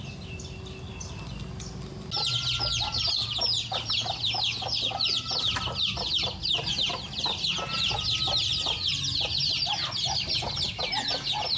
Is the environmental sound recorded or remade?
recorded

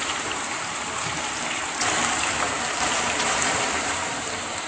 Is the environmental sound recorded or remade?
remade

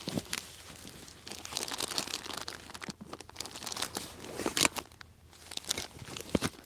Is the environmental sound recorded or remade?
recorded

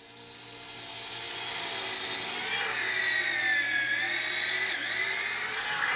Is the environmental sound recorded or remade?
recorded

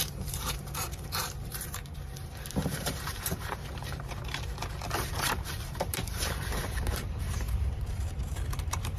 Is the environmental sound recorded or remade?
remade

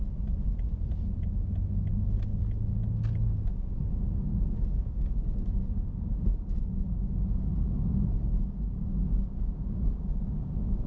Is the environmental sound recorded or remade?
recorded